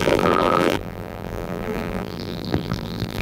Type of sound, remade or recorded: remade